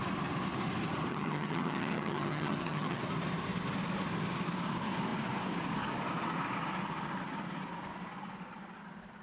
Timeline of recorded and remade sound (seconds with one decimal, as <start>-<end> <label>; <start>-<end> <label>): 0.0-1.1 recorded; 1.1-3.0 remade; 3.0-9.2 recorded